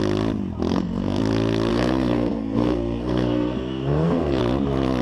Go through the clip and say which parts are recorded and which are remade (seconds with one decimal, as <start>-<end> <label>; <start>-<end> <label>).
0.0-0.7 recorded; 0.7-1.2 remade; 1.2-1.7 recorded; 1.7-4.4 remade; 4.4-5.0 recorded